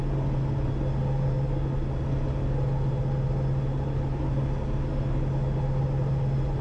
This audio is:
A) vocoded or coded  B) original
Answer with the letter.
B